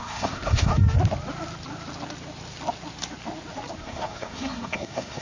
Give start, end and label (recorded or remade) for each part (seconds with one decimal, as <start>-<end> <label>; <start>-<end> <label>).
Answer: 0.0-0.7 remade; 0.7-3.8 recorded; 3.8-5.2 remade